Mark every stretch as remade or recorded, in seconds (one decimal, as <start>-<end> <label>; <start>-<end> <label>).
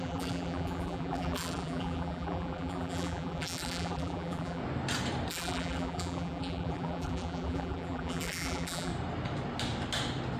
0.0-4.6 remade; 4.6-5.3 recorded; 5.3-8.9 remade; 8.9-10.4 recorded